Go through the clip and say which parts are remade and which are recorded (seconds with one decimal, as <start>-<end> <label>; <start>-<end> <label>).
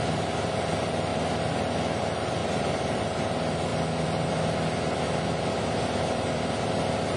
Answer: 0.0-2.4 recorded; 2.4-3.0 remade; 3.0-7.2 recorded